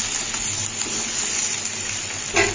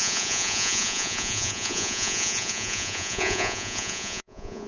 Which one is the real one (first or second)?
first